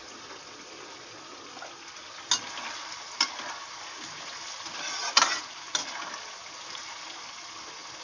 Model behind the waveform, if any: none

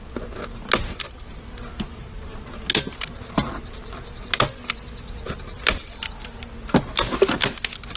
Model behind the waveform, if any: none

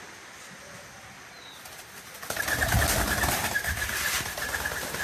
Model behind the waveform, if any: none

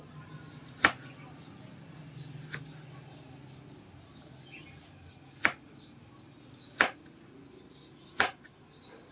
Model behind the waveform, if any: none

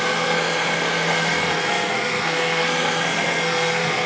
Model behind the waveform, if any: codec, SNAC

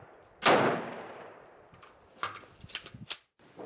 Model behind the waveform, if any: none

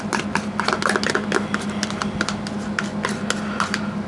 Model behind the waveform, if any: none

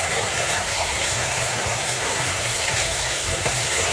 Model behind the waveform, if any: codec, SNAC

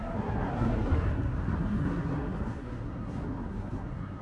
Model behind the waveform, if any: codec, SNAC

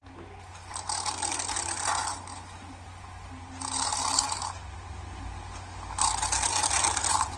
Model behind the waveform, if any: none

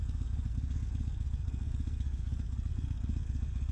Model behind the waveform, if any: codec, SNAC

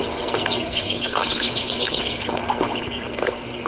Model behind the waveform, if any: codec, SNAC